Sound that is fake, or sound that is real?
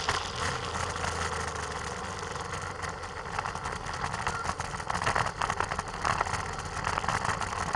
real